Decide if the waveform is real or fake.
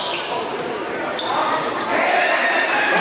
real